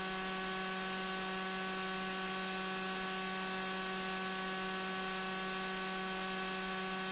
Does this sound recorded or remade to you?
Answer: recorded